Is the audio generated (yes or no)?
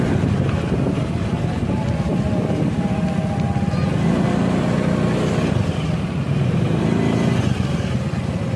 no